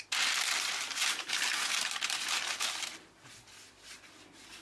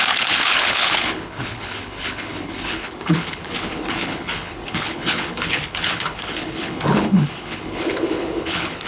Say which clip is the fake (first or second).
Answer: second